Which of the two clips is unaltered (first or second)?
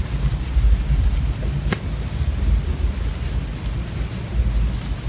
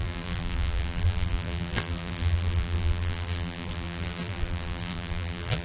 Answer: first